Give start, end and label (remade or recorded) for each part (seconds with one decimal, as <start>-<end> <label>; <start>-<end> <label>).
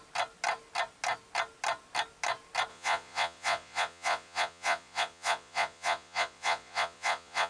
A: 0.0-2.7 recorded; 2.7-7.5 remade